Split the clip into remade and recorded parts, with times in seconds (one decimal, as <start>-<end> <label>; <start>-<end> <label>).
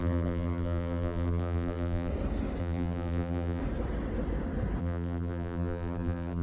0.0-2.1 remade; 2.1-2.6 recorded; 2.6-3.6 remade; 3.6-4.8 recorded; 4.8-6.4 remade